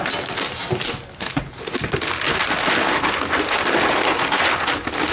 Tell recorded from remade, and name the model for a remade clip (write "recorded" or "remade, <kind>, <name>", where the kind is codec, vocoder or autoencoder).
recorded